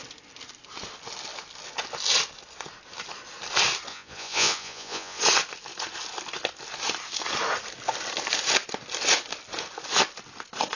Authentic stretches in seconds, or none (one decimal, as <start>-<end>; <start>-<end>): 0.0-3.9; 5.2-10.8